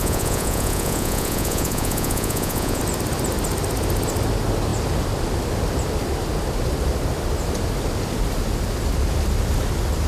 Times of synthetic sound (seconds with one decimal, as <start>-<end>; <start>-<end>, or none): 0.0-2.8